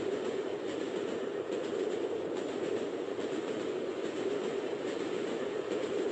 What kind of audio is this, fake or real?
fake